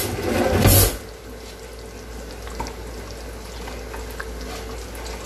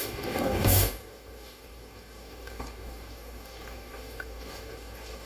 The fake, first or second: second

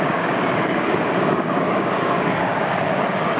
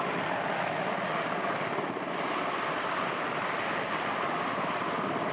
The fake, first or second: first